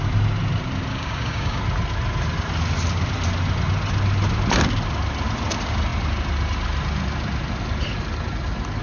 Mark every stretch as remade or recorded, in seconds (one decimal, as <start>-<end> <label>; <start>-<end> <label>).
0.0-0.9 recorded; 0.9-1.6 remade; 1.6-8.8 recorded